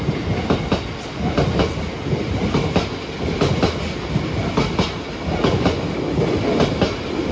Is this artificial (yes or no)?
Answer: no